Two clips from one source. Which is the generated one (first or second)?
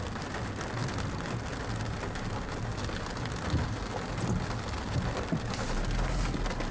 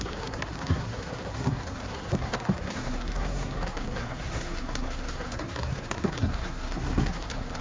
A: second